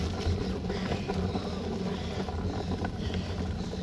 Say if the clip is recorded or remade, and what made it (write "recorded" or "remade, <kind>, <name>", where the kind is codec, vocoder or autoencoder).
recorded